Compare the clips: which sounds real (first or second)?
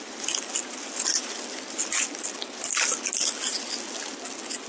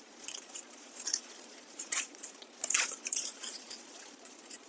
first